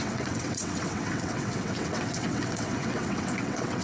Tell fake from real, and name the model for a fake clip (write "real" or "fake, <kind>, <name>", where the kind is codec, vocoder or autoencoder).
fake, vocoder, WaveNeXt